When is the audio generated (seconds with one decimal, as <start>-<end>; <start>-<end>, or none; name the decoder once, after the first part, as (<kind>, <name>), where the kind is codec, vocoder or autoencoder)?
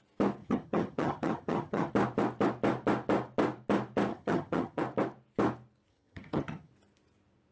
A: 0.4-1.9 (vocoder, HiFi-GAN); 4.1-4.8; 5.9-6.7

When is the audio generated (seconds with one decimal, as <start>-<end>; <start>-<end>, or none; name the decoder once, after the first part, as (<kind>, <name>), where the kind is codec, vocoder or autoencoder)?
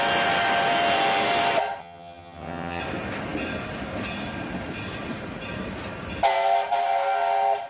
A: 1.8-2.8 (vocoder, HiFi-GAN)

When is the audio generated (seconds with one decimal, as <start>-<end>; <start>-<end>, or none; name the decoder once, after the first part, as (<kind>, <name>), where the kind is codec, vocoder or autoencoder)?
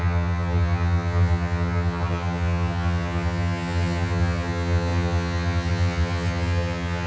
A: 0.0-7.1 (vocoder, HiFi-GAN)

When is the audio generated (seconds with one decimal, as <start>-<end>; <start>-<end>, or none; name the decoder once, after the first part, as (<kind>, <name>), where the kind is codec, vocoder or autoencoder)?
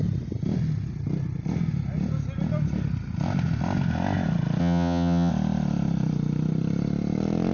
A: 4.6-5.3 (vocoder, HiFi-GAN)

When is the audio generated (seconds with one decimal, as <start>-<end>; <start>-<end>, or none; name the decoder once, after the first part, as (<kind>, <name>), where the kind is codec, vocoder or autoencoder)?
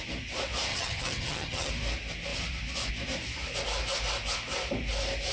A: 0.7-1.7 (vocoder, HiFi-GAN)